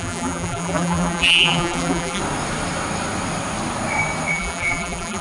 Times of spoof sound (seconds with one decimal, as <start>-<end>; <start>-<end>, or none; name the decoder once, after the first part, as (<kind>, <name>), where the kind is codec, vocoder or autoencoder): 0.0-2.2 (vocoder, BigVGAN v2); 4.3-5.2